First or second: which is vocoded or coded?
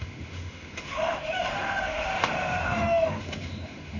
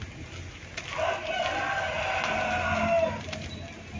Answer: first